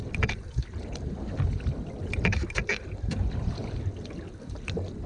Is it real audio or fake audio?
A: fake